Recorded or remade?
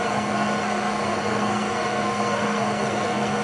remade